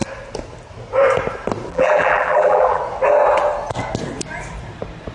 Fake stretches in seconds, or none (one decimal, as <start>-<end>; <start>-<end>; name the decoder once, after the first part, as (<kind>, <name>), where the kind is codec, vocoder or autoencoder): 1.7-2.8 (vocoder, BigVGAN v2)